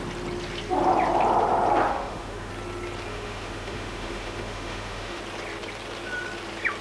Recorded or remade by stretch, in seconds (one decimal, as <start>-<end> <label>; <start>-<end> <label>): 0.0-1.9 recorded; 1.9-2.5 remade; 2.5-3.1 recorded; 3.1-5.2 remade; 5.2-6.8 recorded